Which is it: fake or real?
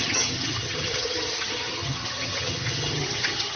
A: fake